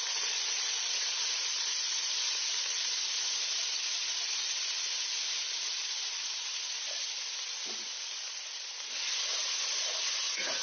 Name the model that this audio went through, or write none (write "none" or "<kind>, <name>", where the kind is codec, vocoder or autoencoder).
none